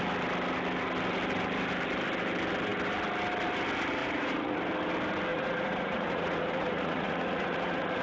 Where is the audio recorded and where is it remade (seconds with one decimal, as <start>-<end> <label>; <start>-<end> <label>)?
0.0-4.0 recorded; 4.0-4.6 remade; 4.6-5.3 recorded; 5.3-8.0 remade

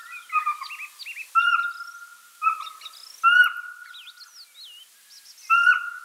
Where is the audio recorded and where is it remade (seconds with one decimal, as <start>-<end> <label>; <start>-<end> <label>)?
0.0-6.0 recorded

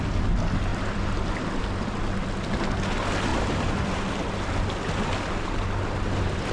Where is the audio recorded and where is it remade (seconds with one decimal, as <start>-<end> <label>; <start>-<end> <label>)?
0.0-0.7 recorded; 0.7-1.6 remade; 1.6-3.3 recorded; 3.3-6.1 remade; 6.1-6.5 recorded

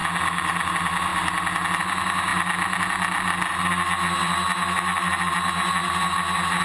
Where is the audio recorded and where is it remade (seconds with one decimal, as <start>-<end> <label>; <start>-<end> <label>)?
0.0-6.6 recorded